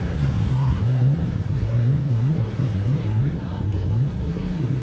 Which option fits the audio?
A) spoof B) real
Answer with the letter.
A